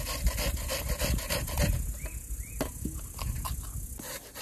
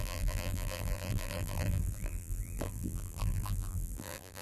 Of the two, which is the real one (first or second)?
first